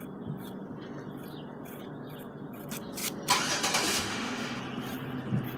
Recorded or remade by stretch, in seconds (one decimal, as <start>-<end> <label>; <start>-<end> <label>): 0.0-3.9 recorded; 3.9-4.6 remade; 4.6-5.6 recorded